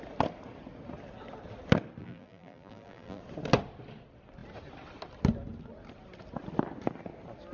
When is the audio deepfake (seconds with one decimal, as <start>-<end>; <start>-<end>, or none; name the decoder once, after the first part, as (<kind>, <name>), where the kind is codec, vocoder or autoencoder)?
2.0-3.2 (vocoder, BigVGAN v2)